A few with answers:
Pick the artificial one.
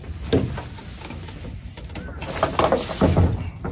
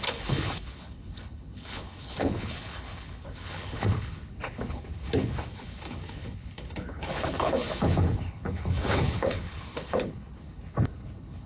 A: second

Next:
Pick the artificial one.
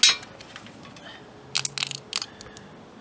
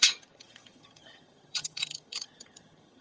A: second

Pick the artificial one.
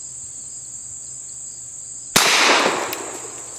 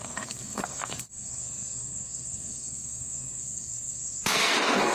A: second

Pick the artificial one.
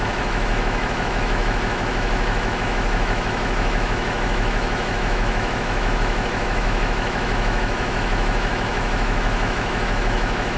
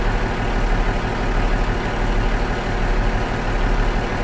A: first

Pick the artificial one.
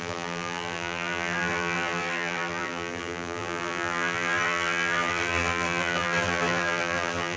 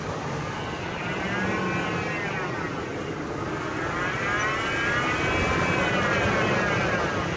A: first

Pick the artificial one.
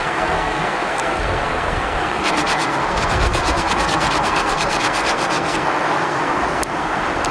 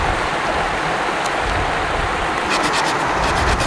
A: first